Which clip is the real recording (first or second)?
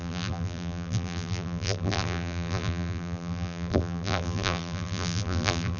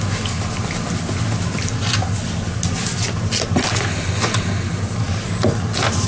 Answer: second